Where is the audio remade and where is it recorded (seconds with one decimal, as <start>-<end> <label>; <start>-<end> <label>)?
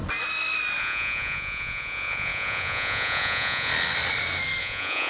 0.0-0.8 recorded; 0.8-3.7 remade; 3.7-4.6 recorded; 4.6-5.1 remade